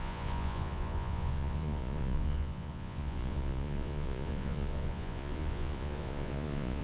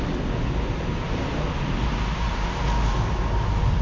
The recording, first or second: second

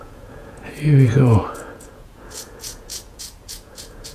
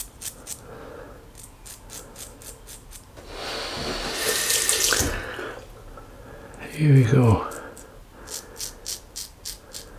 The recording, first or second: second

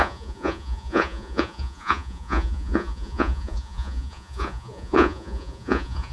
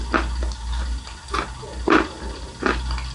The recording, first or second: second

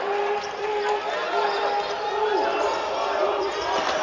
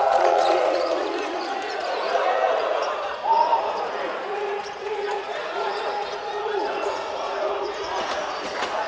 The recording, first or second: first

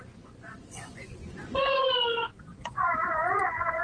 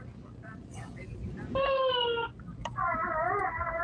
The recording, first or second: second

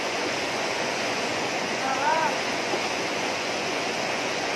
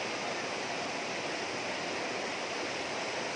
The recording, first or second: second